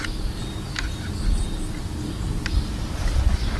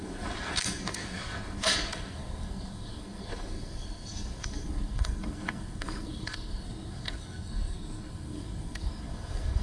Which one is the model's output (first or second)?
second